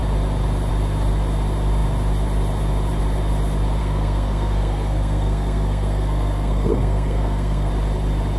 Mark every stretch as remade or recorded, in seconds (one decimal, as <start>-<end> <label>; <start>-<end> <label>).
0.0-3.8 recorded; 3.8-7.7 remade; 7.7-8.4 recorded